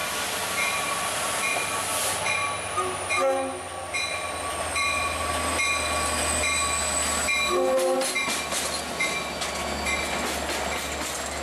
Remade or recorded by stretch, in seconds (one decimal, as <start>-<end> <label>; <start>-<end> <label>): 0.0-11.4 recorded

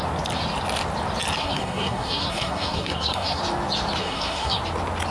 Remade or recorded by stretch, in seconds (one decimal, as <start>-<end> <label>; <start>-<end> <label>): 0.0-1.4 recorded; 1.4-3.4 remade; 3.4-4.0 recorded; 4.0-4.6 remade; 4.6-5.1 recorded

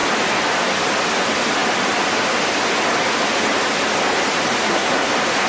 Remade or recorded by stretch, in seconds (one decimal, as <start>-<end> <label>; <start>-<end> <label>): 0.0-4.6 recorded; 4.6-5.1 remade; 5.1-5.5 recorded

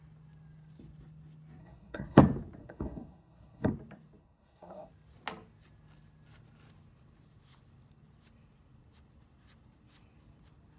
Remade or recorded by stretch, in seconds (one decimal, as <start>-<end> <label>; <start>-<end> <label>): 0.0-1.6 recorded; 1.6-2.2 remade; 2.2-2.6 recorded; 2.6-3.7 remade; 3.7-4.2 recorded; 4.2-4.9 remade; 4.9-10.8 recorded

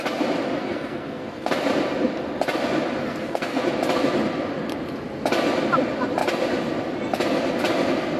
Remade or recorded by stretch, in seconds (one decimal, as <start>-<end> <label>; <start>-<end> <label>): 0.0-0.6 recorded; 0.6-1.5 remade; 1.5-3.0 recorded; 3.0-3.6 remade; 3.6-8.2 recorded